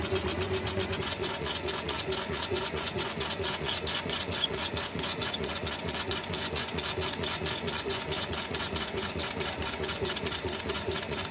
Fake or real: fake